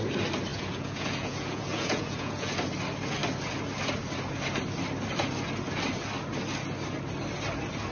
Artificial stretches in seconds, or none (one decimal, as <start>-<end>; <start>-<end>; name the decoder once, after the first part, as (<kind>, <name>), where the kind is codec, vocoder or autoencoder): 0.5-2.5 (vocoder, Vocos)

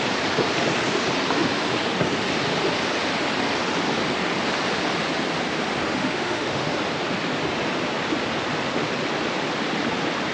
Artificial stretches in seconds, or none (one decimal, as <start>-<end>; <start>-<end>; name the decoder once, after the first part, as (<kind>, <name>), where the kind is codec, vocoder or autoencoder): 5.8-6.7 (autoencoder, DAC-VAE)

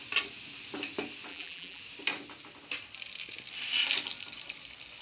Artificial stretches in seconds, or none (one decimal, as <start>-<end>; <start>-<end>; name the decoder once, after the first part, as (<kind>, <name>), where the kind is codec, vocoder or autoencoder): 1.3-1.8 (vocoder, BigVGAN v2)

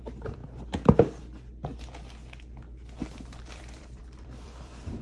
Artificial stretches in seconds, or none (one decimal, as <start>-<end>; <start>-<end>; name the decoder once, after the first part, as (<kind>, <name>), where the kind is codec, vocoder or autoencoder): 0.0-0.4 (vocoder, BigVGAN v2); 3.4-5.0

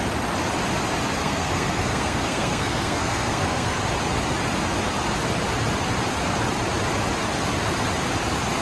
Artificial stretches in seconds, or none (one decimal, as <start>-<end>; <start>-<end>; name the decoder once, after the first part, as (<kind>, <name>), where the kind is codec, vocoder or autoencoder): 1.2-3.8 (codec, SNAC)